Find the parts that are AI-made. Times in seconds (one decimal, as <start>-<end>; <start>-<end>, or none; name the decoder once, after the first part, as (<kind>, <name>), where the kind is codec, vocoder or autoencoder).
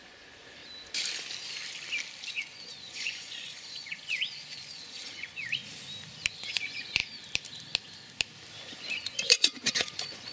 0.0-0.6 (vocoder, Vocos); 2.3-5.6; 6.3-7.0; 8.6-10.3